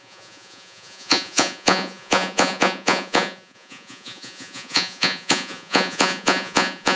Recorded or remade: remade